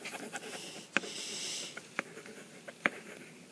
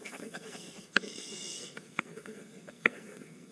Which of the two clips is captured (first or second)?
first